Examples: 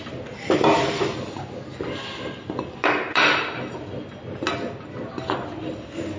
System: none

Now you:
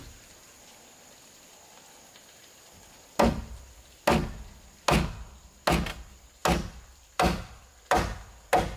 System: none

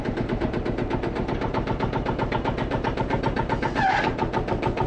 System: vocoder, BigVGAN v2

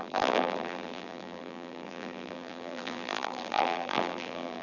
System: vocoder, BigVGAN v2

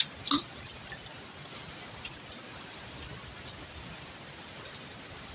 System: none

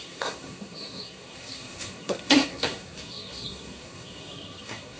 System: codec, SNAC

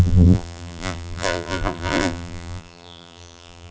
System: vocoder, BigVGAN v2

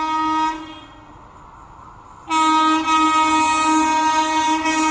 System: none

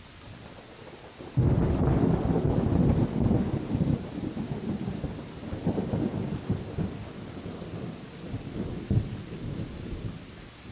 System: none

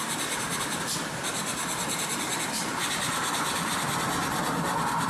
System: none